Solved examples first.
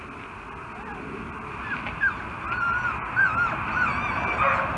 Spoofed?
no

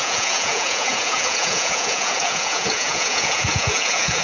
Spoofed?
yes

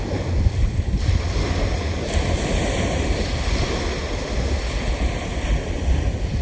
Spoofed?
no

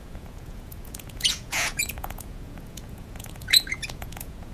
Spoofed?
yes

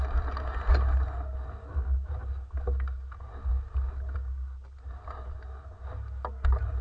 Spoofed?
no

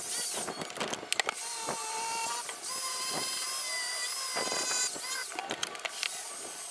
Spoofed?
no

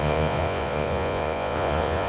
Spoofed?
yes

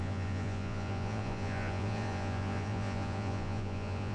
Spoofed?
yes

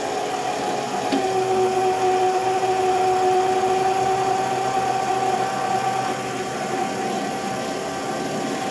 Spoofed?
no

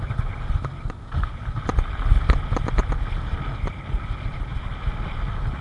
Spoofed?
no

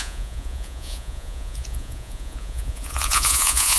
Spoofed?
yes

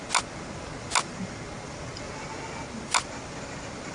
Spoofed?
no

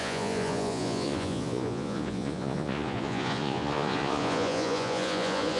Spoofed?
yes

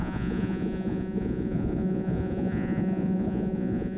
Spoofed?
yes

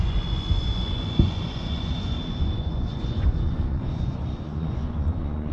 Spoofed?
yes